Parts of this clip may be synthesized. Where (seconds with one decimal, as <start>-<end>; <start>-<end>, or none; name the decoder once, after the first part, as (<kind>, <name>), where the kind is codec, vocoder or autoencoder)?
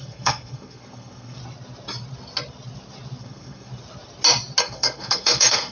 0.0-1.4 (codec, SNAC); 3.2-3.7; 4.6-5.7